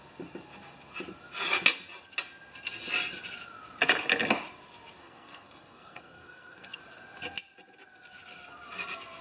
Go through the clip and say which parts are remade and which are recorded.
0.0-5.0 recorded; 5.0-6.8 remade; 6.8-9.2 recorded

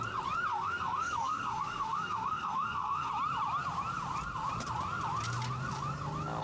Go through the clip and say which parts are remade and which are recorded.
0.0-0.5 recorded; 0.5-3.1 remade; 3.1-6.4 recorded

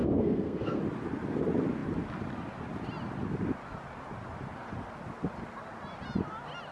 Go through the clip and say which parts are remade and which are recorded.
0.0-0.8 remade; 0.8-6.7 recorded

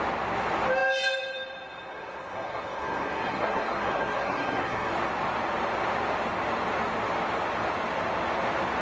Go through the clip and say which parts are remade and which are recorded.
0.0-1.9 recorded; 1.9-4.9 remade; 4.9-8.8 recorded

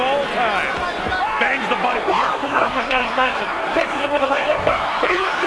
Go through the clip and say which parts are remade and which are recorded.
0.0-2.0 recorded; 2.0-5.5 remade